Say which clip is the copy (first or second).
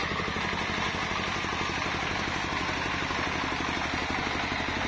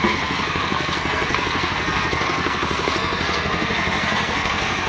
second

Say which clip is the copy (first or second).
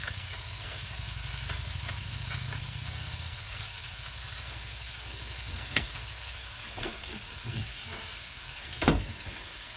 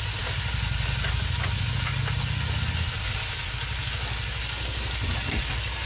first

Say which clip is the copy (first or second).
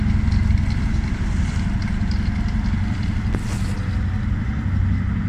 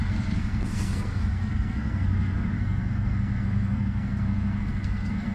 second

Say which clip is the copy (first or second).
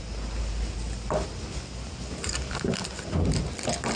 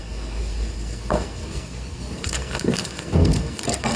second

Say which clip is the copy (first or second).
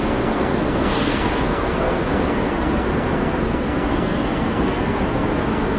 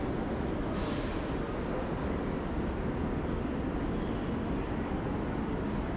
first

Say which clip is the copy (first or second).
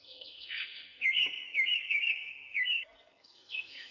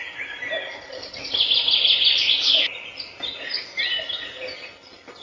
first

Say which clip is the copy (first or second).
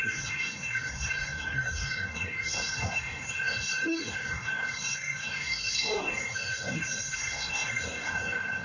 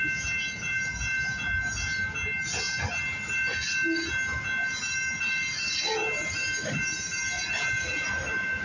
first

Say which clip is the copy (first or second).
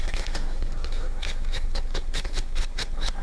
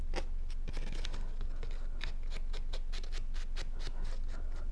first